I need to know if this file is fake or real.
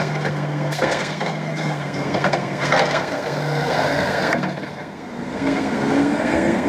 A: fake